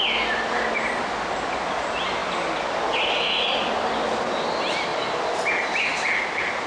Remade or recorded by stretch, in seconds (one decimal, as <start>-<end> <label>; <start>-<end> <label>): 0.0-6.7 recorded